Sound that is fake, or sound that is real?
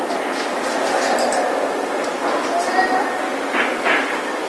real